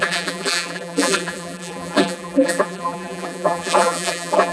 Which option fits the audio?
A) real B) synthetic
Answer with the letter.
B